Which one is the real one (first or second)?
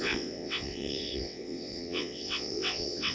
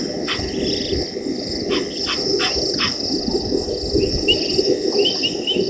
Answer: second